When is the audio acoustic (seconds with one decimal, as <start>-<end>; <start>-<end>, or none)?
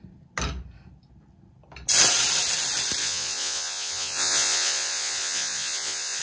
0.0-3.0